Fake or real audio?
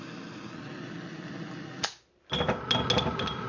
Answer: real